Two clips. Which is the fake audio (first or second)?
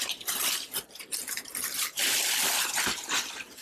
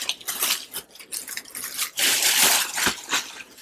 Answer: first